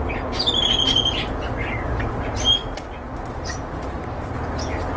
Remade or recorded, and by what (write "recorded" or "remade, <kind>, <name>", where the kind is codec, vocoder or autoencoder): recorded